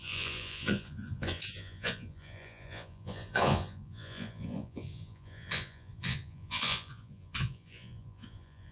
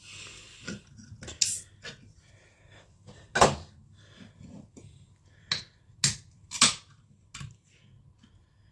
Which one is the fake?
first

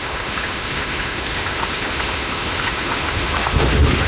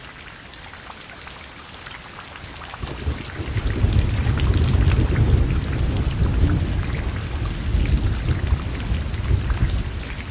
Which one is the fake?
first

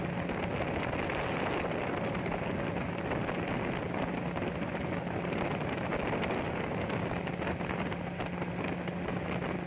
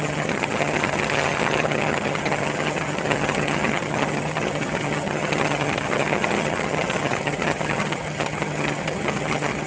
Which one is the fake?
second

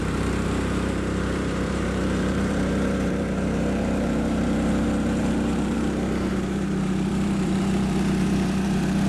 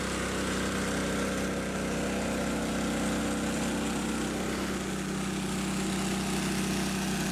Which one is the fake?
first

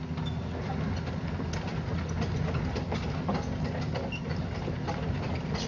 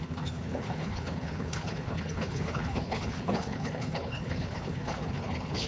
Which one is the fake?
second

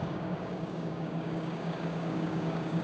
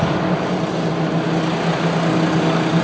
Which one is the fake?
first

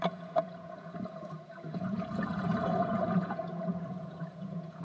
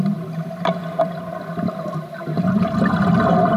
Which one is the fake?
first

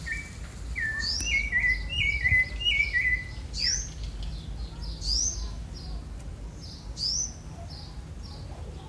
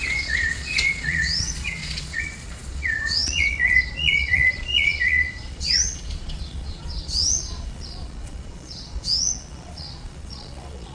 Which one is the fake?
second